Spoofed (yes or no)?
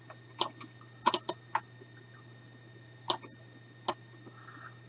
no